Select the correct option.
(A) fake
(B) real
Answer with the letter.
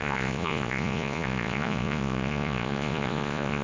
A